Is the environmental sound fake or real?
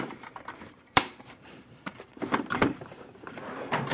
fake